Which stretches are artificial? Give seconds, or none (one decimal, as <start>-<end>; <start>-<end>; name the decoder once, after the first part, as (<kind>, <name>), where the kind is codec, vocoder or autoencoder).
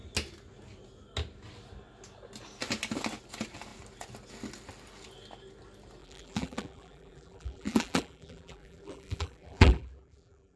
6.0-10.6 (vocoder, BigVGAN v2)